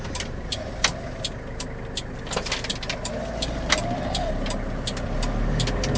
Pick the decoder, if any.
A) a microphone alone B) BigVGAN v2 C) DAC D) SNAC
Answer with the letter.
A